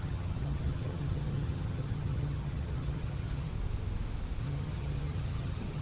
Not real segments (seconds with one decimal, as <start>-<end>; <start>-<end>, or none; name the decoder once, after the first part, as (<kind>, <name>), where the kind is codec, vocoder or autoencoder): 0.0-3.5 (vocoder, HiFi-GAN); 4.4-5.8

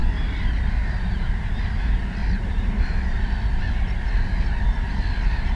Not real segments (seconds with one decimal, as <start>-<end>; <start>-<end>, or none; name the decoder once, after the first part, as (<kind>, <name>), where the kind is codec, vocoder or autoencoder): 2.2-3.2 (vocoder, BigVGAN v2)

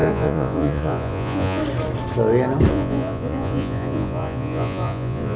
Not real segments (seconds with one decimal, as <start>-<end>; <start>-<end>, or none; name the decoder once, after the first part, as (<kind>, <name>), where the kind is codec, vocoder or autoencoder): 0.0-1.6 (vocoder, Vocos); 2.7-5.4

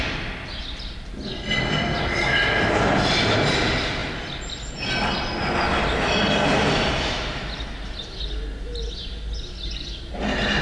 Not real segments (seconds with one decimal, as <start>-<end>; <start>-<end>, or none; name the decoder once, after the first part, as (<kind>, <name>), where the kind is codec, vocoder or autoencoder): none

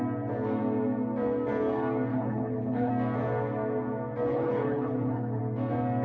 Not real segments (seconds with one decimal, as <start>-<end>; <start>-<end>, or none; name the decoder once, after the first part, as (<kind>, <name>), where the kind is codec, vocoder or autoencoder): 2.1-2.9 (codec, HILCodec); 4.3-5.4